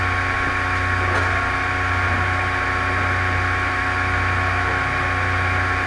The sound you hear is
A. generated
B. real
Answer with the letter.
B